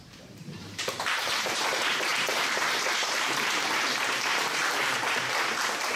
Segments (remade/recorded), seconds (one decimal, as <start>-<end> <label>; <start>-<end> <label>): 0.0-6.0 remade